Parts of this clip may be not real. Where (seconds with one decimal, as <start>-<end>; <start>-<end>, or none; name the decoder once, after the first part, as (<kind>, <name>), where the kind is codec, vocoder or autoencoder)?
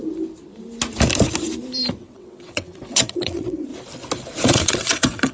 2.0-3.7 (vocoder, WaveNeXt); 4.5-5.3